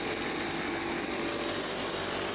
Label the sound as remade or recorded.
recorded